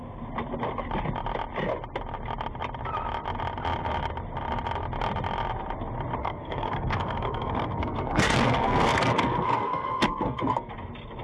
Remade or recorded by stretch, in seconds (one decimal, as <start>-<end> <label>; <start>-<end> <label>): 0.0-6.2 recorded; 6.2-10.7 remade; 10.7-11.2 recorded